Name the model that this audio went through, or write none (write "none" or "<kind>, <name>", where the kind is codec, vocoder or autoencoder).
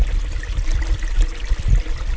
none